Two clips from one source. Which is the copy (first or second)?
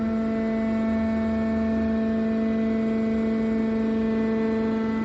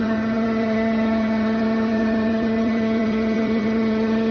second